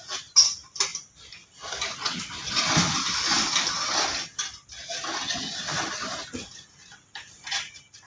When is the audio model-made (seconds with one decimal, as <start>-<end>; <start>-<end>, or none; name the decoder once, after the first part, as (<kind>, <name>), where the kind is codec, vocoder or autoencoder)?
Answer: none